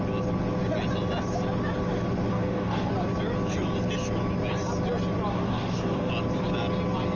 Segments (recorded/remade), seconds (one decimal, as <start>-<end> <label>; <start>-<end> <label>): 0.0-2.3 recorded; 2.3-2.9 remade; 2.9-5.3 recorded; 5.3-6.1 remade; 6.1-7.2 recorded